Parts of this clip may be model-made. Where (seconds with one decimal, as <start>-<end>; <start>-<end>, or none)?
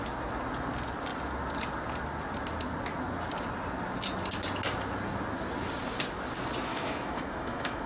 6.7-7.9